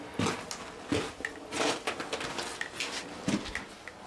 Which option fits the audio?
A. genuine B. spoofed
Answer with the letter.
A